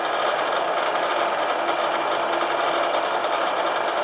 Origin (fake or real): real